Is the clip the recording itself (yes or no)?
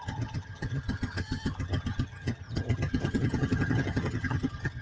no